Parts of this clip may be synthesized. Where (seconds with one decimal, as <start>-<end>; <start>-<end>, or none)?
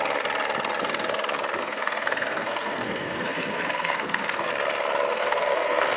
1.6-4.5; 5.1-6.0